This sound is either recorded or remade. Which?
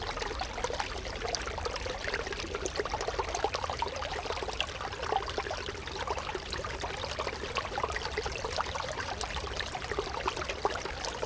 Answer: recorded